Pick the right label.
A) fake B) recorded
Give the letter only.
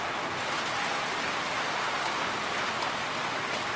B